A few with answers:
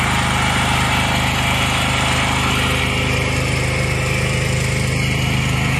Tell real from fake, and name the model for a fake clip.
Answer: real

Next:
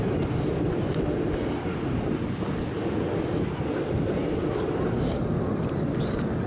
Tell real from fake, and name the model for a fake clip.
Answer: real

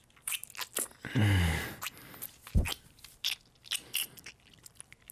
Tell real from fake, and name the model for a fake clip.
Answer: real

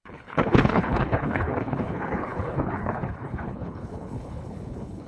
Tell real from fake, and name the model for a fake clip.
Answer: fake, codec, HILCodec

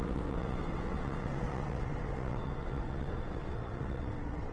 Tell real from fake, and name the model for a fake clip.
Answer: fake, vocoder, WaveNeXt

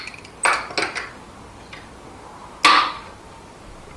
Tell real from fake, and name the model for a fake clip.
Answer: real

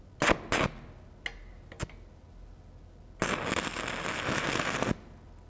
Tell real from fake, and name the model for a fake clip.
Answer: real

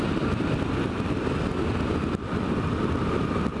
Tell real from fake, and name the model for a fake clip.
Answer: real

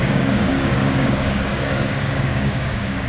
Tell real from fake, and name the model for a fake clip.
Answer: fake, codec, DAC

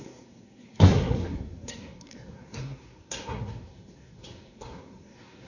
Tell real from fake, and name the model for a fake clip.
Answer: fake, codec, SNAC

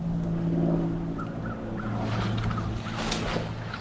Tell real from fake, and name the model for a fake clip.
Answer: real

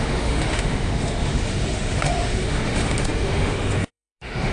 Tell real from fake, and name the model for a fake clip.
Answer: fake, autoencoder, DAC-VAE